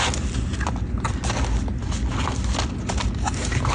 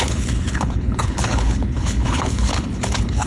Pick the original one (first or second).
first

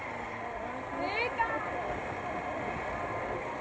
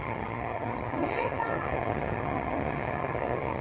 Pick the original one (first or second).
first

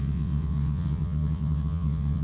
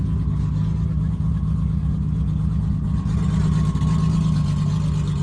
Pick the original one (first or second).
second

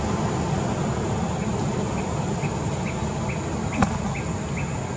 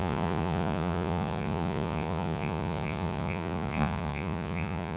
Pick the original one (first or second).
first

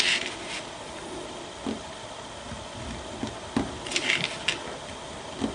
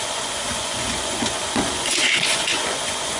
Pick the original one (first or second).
first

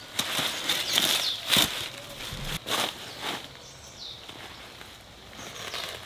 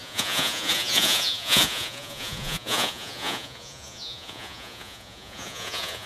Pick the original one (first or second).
first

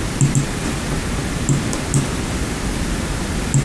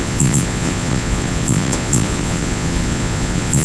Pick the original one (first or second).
first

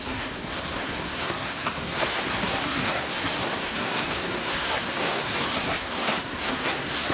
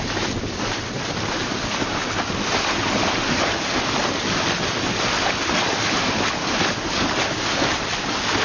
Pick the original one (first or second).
second